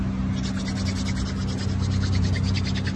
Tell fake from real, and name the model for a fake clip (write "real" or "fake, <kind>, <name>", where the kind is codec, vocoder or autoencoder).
real